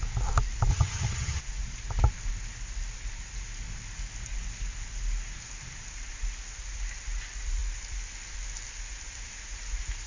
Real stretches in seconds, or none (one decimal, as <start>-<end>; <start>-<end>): 0.0-0.7; 1.4-10.1